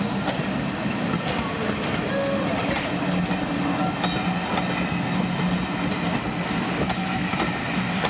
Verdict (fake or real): real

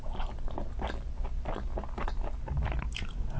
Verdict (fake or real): real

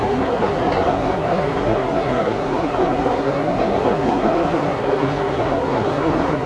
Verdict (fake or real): fake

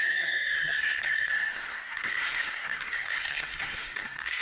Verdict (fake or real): fake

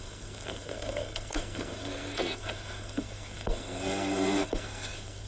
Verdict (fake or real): fake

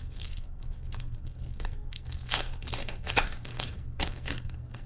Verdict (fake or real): fake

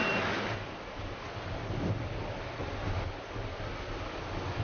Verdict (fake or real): real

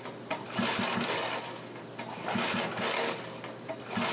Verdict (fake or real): real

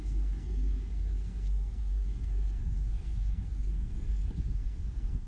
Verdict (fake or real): fake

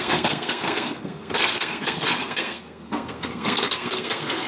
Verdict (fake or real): fake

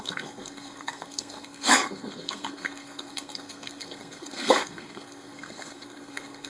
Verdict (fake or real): fake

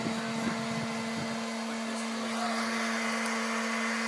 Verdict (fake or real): real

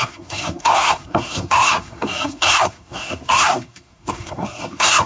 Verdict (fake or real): fake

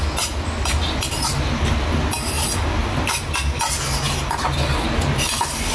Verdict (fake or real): real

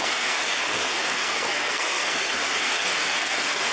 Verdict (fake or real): fake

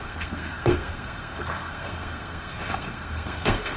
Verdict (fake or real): fake